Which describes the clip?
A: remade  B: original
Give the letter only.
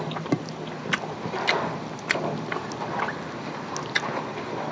B